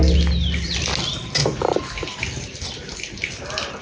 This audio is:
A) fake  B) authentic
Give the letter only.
B